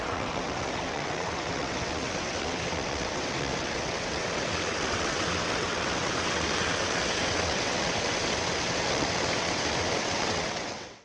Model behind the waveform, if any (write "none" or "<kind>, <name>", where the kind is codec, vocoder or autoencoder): vocoder, WaveNeXt